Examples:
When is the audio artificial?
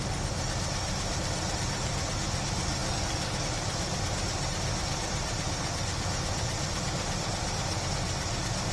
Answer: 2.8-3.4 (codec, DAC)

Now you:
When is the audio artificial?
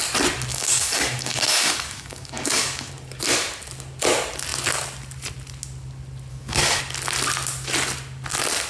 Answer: 0.5-2.9 (codec, DAC); 6.3-6.8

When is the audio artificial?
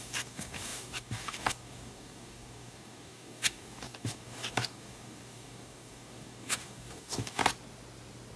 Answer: 0.0-7.4 (codec, DAC)